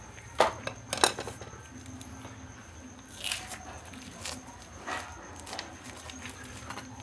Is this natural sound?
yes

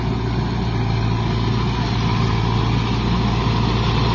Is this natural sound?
yes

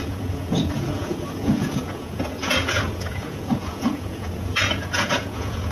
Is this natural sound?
no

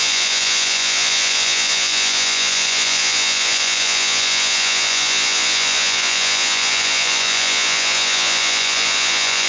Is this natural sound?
no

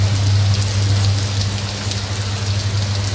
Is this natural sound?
yes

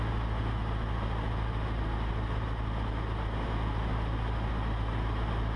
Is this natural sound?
yes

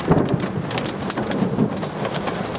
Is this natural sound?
yes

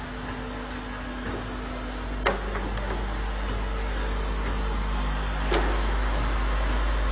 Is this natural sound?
yes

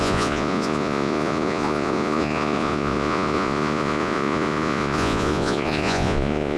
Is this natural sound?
no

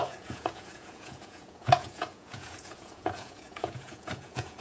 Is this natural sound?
no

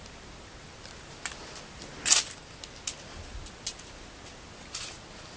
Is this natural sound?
yes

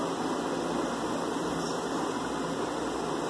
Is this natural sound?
yes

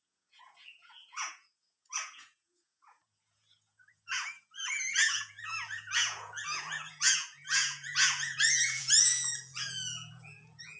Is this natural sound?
no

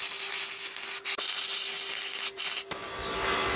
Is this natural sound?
yes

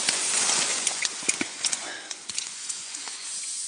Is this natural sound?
no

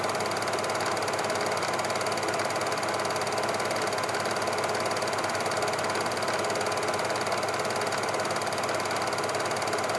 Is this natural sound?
yes